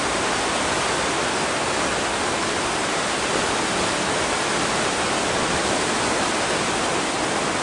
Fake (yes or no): no